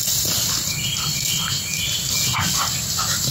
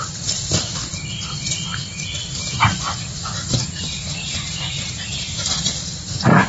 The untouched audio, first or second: first